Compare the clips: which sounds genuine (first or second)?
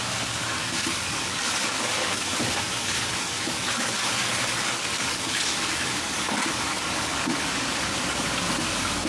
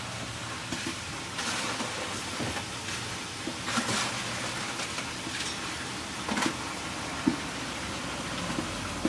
second